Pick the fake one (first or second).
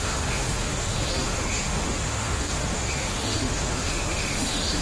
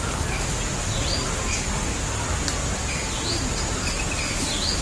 first